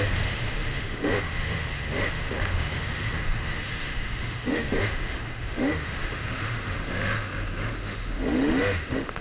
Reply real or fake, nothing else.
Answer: fake